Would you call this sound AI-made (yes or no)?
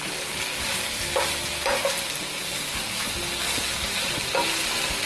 no